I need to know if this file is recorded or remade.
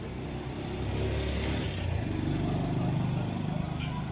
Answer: recorded